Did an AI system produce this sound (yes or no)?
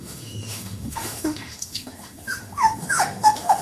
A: yes